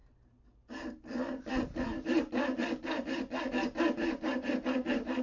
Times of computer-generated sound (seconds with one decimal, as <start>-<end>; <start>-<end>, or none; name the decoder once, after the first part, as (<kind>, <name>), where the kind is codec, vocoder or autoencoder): none